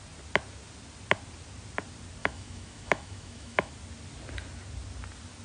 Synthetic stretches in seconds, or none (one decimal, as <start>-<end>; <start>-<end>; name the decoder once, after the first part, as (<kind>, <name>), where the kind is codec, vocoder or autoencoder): 2.2-3.7 (autoencoder, DAC-VAE)